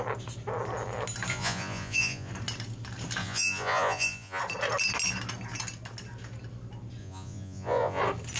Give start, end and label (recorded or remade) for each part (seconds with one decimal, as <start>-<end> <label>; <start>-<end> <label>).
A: 0.0-1.3 recorded; 1.3-2.3 remade; 2.3-3.2 recorded; 3.2-4.4 remade; 4.4-7.0 recorded; 7.0-8.0 remade; 8.0-8.4 recorded